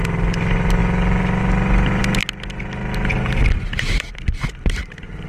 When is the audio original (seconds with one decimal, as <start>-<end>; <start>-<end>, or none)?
0.0-5.3